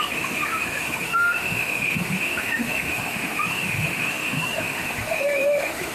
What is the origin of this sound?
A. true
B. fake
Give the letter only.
B